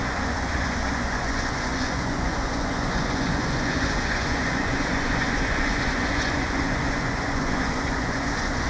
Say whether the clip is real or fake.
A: fake